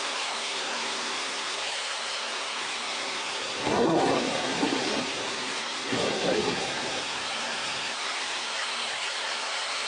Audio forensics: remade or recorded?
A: remade